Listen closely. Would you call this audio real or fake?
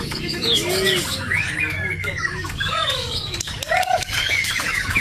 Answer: fake